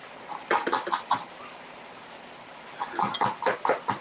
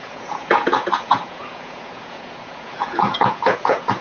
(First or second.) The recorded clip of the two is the first